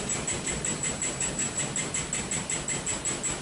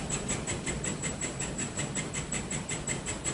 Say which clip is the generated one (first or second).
second